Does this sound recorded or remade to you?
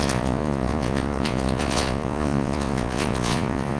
remade